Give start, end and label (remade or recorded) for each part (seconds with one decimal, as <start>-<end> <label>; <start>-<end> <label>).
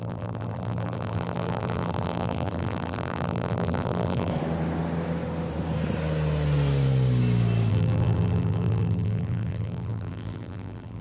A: 0.0-4.3 remade; 4.3-7.7 recorded; 7.7-11.0 remade